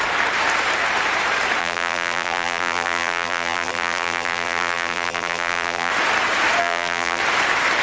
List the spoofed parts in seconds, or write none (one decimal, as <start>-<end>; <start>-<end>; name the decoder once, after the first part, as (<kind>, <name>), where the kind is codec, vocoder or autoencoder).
1.6-5.9 (vocoder, BigVGAN v2); 6.6-7.2